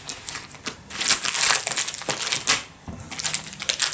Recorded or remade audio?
recorded